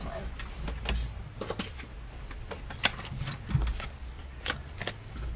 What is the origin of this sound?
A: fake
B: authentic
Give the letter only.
B